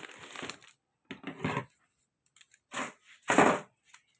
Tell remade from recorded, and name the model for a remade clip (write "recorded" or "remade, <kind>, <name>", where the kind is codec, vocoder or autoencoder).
recorded